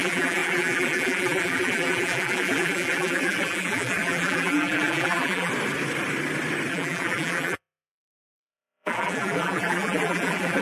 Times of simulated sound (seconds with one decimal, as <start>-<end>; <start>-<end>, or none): 0.0-5.5; 6.7-10.6